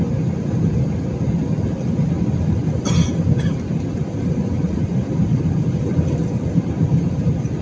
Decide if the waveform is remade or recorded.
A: recorded